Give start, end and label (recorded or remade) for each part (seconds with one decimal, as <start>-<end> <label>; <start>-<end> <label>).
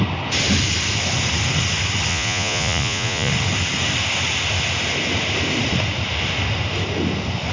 0.0-2.1 recorded; 2.1-3.3 remade; 3.3-7.5 recorded